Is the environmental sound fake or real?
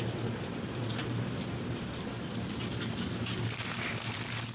real